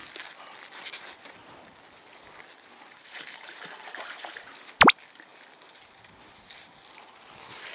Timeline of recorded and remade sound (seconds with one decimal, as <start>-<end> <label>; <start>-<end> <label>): 0.0-2.9 recorded; 2.9-4.0 remade; 4.0-7.7 recorded